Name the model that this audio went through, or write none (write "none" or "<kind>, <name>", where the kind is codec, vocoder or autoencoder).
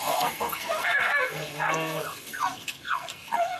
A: codec, SNAC